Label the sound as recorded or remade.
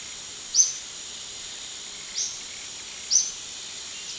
recorded